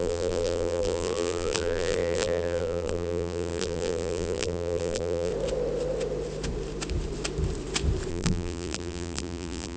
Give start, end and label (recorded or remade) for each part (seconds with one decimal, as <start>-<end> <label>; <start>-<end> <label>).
0.0-5.3 remade; 5.3-8.1 recorded; 8.1-9.8 remade